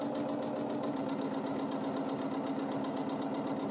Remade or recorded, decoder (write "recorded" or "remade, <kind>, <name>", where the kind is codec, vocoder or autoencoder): recorded